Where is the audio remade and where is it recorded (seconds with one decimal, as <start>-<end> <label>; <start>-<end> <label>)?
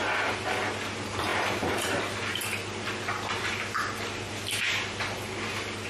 0.0-5.9 recorded